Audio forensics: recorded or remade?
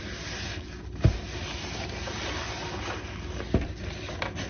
recorded